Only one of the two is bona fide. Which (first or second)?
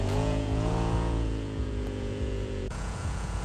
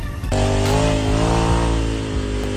second